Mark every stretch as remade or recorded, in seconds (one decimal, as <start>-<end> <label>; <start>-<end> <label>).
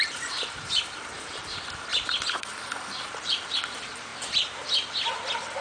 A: 0.0-4.1 remade; 4.1-5.6 recorded